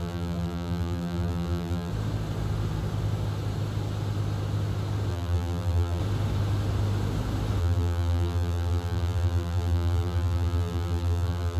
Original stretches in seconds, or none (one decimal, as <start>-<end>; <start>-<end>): 1.9-5.1; 6.0-7.6